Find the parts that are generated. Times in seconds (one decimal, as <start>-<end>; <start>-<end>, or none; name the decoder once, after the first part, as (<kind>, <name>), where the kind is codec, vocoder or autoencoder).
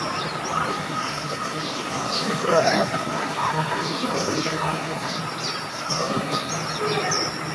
0.7-5.2 (codec, SNAC); 5.7-6.5